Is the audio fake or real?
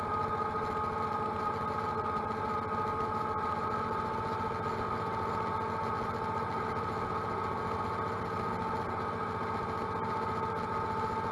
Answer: real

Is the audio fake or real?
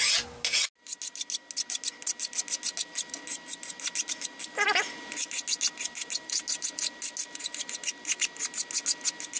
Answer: real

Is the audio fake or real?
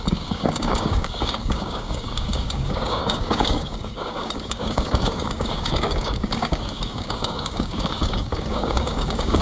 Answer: fake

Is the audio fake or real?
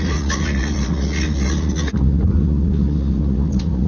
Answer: fake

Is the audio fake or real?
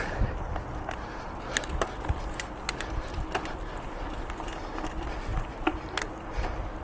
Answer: real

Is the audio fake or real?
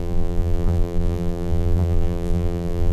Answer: fake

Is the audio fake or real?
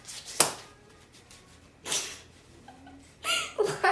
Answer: real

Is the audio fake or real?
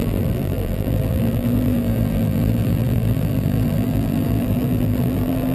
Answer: fake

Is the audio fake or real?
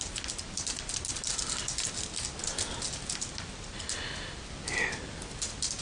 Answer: real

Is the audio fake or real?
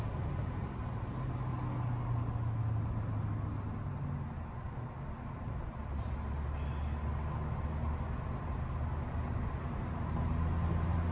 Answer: real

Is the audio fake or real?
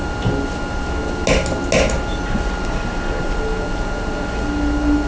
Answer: real